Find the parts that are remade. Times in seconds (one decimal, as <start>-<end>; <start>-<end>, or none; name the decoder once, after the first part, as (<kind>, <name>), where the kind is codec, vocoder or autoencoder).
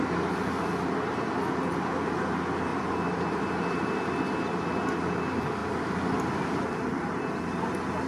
2.7-3.4 (vocoder, BigVGAN v2); 5.6-7.0